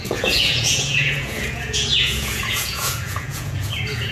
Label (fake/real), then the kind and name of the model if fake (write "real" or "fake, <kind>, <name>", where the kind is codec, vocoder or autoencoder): fake, vocoder, Vocos